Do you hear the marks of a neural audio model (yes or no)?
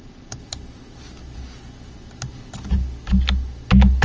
no